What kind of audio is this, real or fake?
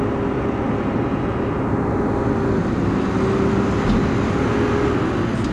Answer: real